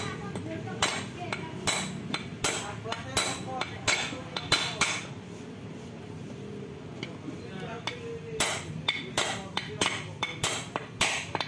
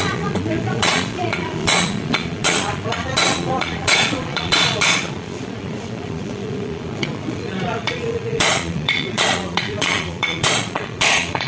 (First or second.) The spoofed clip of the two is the second